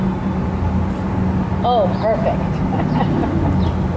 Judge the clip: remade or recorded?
recorded